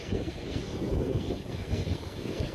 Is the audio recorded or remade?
remade